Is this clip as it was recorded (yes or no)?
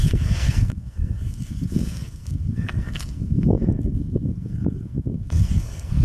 no